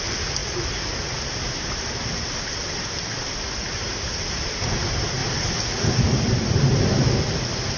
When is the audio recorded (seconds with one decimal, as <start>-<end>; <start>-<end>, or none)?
0.0-7.8